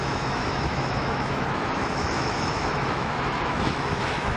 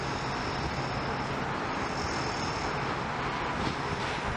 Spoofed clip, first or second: first